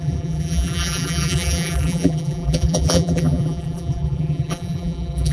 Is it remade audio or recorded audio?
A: remade